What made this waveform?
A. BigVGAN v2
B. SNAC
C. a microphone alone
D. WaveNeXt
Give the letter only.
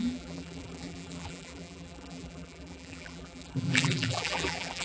A